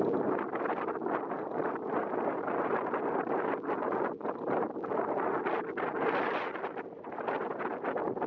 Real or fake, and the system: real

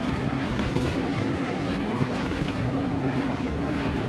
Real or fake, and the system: fake, codec, SNAC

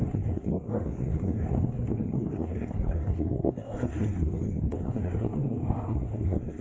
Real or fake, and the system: fake, codec, SNAC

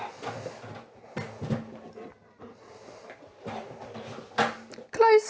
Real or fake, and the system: real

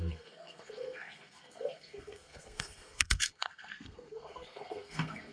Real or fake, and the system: fake, codec, SNAC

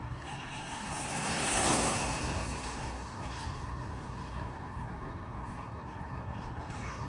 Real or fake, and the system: fake, codec, SNAC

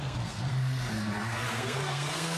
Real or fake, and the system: fake, codec, SNAC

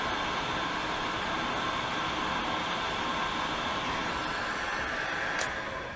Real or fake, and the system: real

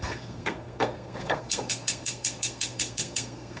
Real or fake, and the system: fake, codec, SNAC